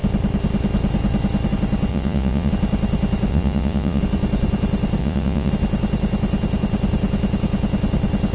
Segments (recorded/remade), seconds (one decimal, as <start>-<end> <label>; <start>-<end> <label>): 0.0-1.9 recorded; 1.9-2.5 remade; 2.5-3.3 recorded; 3.3-4.0 remade; 4.0-5.0 recorded; 5.0-5.5 remade; 5.5-8.3 recorded